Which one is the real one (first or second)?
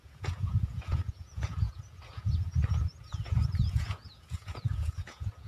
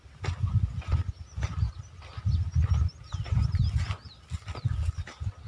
second